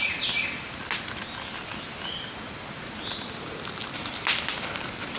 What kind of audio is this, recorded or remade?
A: recorded